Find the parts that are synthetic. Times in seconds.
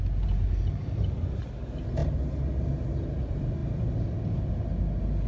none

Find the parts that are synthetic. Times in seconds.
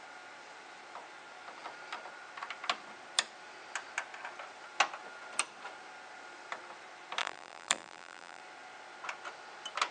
7.2-8.4 (vocoder, BigVGAN v2)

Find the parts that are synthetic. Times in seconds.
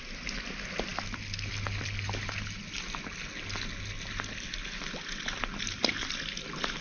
none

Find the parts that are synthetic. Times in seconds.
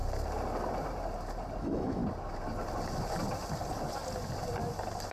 1.6-2.0 (autoencoder, DAC-VAE)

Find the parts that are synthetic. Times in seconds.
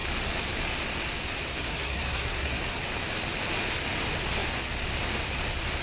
1.6-2.6 (codec, SNAC)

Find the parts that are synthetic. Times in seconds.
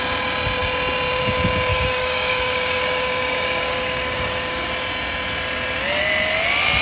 1.7-4.7 (codec, DAC)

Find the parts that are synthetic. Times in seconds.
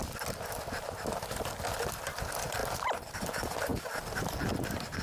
none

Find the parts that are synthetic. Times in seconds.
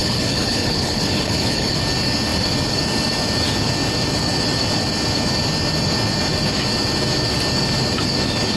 0.0-1.8 (codec, HILCodec)